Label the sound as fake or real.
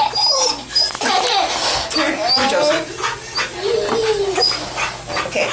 real